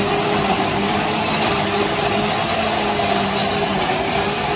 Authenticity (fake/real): real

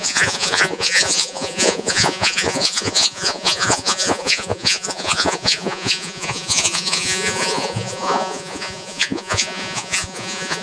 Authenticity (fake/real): fake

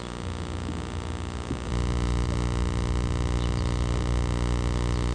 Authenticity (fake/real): real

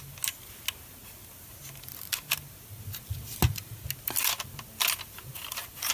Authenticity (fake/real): real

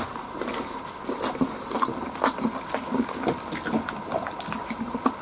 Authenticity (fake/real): real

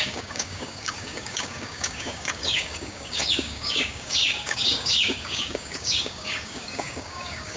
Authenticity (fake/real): fake